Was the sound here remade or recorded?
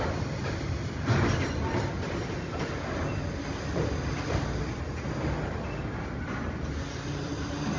recorded